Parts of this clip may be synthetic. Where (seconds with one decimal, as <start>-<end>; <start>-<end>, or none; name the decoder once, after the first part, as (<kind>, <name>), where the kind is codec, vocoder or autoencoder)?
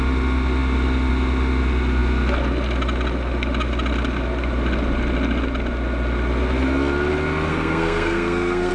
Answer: 7.5-8.7 (codec, SNAC)